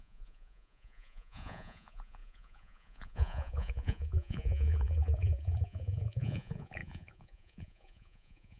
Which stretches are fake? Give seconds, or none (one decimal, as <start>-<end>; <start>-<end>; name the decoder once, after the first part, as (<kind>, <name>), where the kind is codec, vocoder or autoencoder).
0.0-8.6 (vocoder, Vocos)